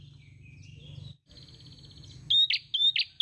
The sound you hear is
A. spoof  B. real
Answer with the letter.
B